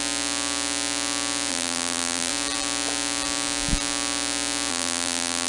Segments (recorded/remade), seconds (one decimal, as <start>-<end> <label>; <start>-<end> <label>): 0.0-1.5 recorded; 1.5-2.3 remade; 2.3-4.7 recorded; 4.7-5.5 remade